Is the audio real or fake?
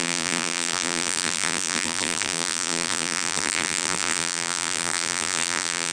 fake